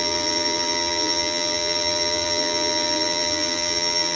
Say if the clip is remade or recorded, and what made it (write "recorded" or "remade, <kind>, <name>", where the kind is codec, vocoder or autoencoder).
remade, vocoder, BigVGAN v2